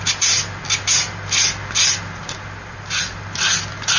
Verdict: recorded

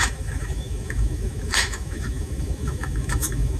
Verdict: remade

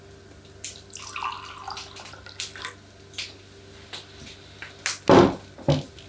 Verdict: recorded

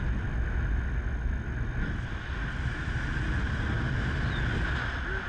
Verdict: recorded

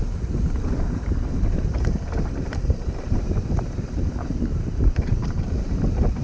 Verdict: remade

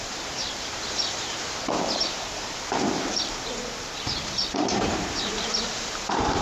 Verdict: remade